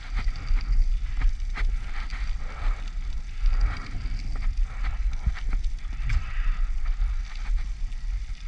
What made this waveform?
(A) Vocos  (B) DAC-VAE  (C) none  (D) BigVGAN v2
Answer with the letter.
C